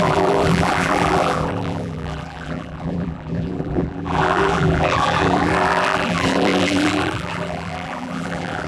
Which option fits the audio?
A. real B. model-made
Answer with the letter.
B